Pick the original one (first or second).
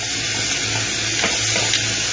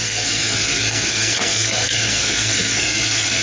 first